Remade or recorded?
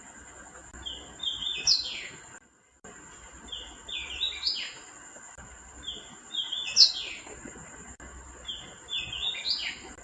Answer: recorded